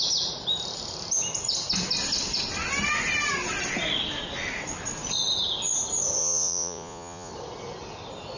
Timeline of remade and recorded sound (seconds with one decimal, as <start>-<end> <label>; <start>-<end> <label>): 0.0-6.2 recorded; 6.2-7.3 remade; 7.3-8.4 recorded